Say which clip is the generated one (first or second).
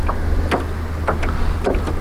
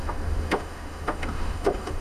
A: second